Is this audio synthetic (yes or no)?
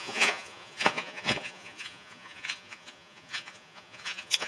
yes